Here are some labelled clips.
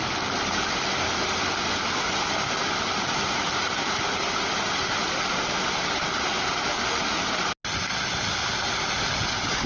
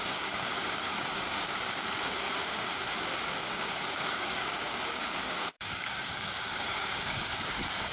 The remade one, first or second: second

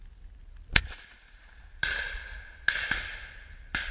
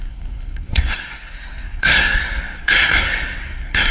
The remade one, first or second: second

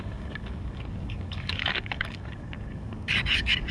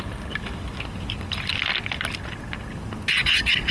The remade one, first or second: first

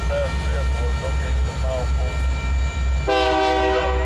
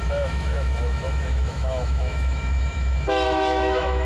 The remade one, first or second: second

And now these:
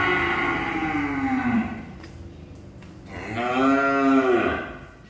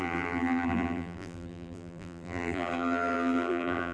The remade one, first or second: second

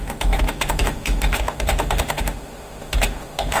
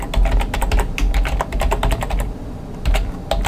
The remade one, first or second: first